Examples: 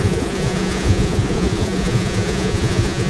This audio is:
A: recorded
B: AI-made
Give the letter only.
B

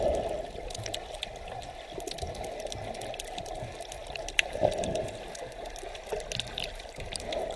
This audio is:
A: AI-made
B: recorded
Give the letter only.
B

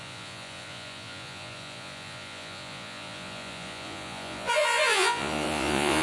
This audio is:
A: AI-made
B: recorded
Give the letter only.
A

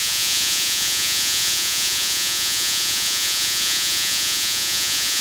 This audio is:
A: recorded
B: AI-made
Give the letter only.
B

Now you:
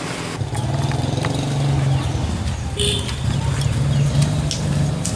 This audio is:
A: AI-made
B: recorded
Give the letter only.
B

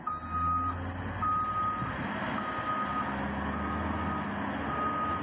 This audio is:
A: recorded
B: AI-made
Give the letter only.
A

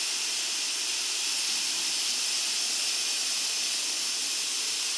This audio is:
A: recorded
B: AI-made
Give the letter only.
A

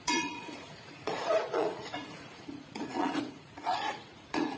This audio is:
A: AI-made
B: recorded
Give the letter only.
A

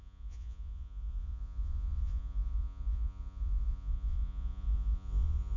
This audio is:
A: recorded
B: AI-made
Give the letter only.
B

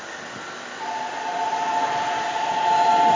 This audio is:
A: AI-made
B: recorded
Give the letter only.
B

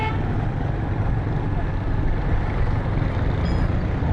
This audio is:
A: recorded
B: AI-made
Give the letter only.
A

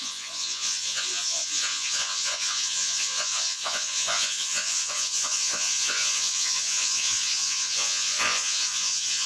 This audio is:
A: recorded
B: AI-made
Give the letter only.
B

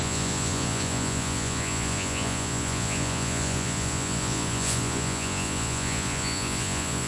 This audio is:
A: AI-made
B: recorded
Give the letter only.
A